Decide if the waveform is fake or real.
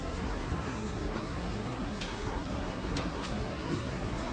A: fake